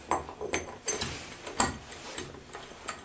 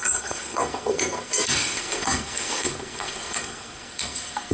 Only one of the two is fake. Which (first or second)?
second